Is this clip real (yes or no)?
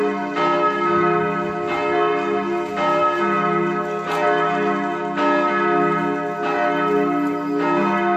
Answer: yes